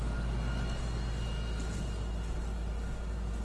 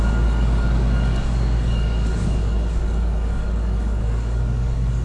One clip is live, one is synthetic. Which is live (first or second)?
first